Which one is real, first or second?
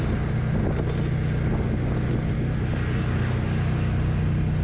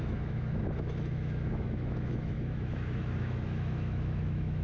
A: first